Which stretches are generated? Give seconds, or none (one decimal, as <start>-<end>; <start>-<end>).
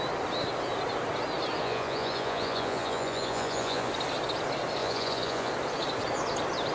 1.6-3.9; 4.8-5.5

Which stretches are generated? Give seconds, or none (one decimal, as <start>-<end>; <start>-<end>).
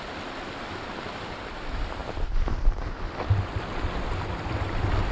2.0-2.7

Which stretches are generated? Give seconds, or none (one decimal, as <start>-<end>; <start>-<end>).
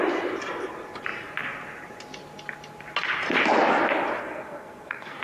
4.2-5.2